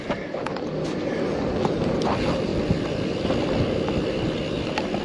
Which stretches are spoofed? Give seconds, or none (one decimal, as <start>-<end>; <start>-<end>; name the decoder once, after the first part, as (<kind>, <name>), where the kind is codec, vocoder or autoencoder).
none